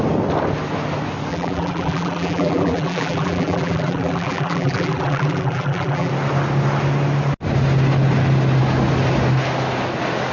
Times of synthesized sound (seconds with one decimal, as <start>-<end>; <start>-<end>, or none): 1.3-6.1